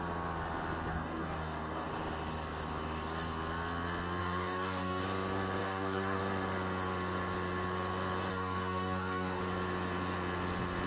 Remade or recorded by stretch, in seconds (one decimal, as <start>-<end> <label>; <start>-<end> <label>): 0.0-0.9 recorded; 0.9-1.9 remade; 1.9-4.2 recorded; 4.2-5.0 remade; 5.0-5.6 recorded; 5.6-6.2 remade; 6.2-8.3 recorded; 8.3-9.4 remade; 9.4-10.9 recorded